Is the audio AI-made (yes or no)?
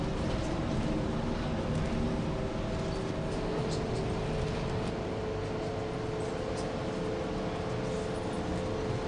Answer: no